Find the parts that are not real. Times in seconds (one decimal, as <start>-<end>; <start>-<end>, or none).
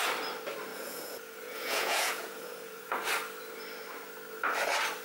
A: 0.7-2.9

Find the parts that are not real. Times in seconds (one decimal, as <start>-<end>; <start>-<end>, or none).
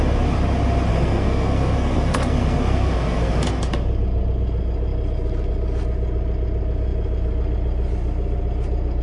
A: 0.9-3.4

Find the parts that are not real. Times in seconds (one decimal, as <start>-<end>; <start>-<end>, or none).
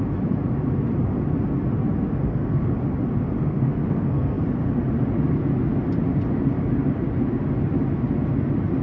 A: 2.2-2.7; 3.4-4.4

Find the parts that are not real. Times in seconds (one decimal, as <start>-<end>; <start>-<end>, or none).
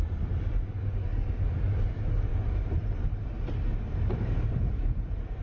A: 0.0-1.1; 1.6-2.3; 4.5-5.4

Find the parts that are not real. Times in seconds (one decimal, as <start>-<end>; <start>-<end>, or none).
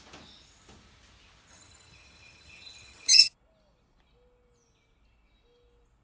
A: 1.5-3.3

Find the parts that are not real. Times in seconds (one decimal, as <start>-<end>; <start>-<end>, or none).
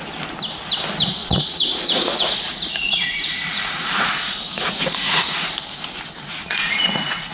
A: 1.2-5.6; 6.4-7.3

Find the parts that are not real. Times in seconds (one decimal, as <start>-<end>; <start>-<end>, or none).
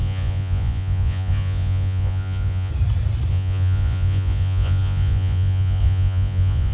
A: 0.0-2.7; 3.3-6.7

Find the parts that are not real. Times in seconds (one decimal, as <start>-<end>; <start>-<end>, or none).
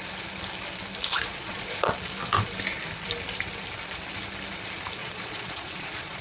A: 1.1-1.9; 5.0-6.2